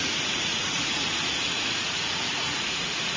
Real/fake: fake